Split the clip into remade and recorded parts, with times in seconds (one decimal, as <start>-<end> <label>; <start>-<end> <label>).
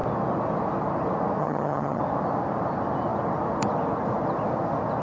0.0-1.4 recorded; 1.4-2.0 remade; 2.0-5.0 recorded